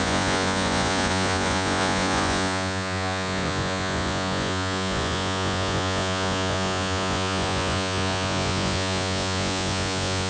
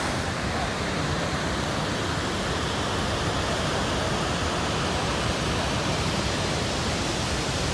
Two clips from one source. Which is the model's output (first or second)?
first